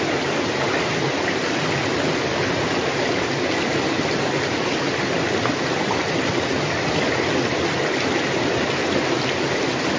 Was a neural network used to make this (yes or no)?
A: no